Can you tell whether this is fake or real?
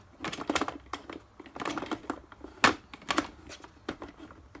real